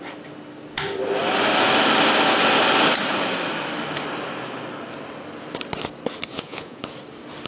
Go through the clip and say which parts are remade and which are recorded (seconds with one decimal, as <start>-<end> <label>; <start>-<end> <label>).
0.0-6.3 recorded; 6.3-6.8 remade; 6.8-7.5 recorded